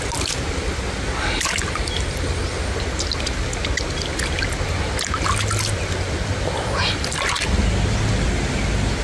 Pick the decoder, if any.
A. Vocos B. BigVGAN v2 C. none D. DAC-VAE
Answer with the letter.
C